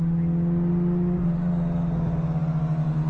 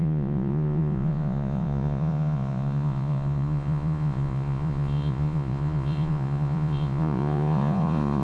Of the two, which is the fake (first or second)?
second